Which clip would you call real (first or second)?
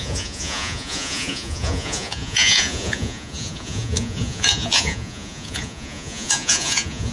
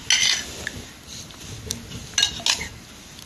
second